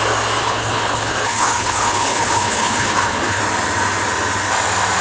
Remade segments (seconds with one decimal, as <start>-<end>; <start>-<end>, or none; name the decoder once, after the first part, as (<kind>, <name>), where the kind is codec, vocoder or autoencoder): 0.4-3.4 (codec, HILCodec)